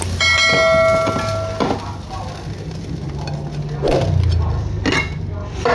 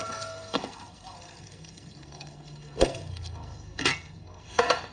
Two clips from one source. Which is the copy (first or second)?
second